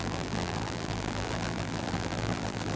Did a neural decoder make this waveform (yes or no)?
yes